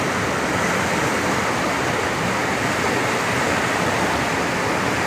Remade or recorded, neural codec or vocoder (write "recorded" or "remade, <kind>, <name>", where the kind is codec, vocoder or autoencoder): recorded